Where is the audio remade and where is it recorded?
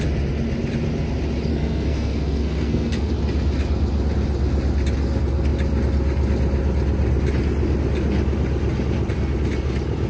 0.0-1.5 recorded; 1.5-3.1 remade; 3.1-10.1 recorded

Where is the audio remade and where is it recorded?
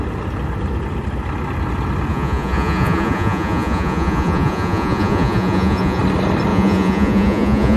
0.0-2.1 recorded; 2.1-6.0 remade; 6.0-6.5 recorded; 6.5-7.8 remade